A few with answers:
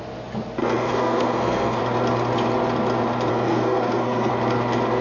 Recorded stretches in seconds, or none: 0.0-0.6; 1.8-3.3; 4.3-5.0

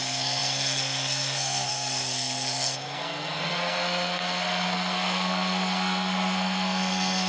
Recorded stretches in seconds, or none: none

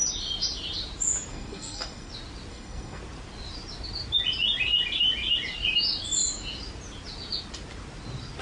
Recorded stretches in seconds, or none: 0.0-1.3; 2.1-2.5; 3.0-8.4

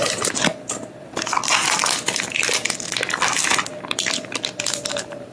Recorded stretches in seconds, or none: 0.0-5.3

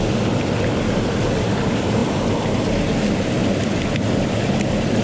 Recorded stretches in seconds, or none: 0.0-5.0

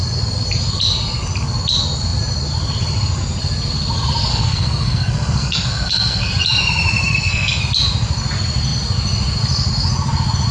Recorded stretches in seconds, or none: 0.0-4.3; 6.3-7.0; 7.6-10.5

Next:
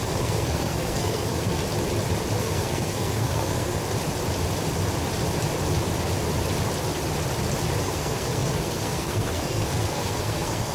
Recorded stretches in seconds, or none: 1.6-2.4; 3.8-7.8